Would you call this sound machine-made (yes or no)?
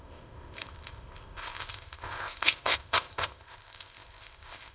yes